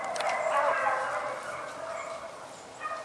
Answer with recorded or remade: recorded